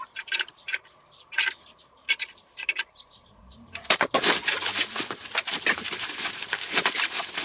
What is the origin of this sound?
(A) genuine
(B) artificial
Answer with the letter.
B